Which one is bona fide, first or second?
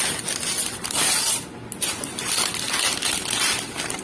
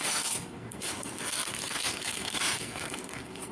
first